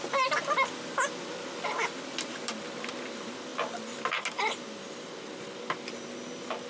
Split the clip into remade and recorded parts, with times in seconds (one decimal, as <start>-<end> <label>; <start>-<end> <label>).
0.0-6.7 recorded